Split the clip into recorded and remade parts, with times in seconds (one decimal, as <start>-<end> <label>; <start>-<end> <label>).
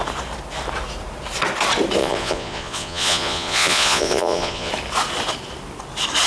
0.0-2.0 recorded; 2.0-4.7 remade; 4.7-6.3 recorded